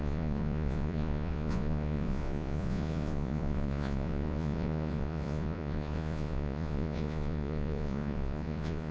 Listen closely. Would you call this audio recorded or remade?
remade